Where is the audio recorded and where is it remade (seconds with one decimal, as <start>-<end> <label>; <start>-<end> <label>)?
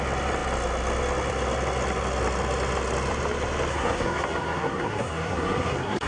0.0-3.7 recorded; 3.7-6.1 remade